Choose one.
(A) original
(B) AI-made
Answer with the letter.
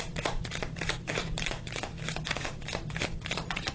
B